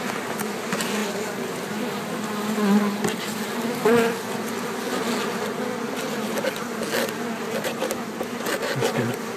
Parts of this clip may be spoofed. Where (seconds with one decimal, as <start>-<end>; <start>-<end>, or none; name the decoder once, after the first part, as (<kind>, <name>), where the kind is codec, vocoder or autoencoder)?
none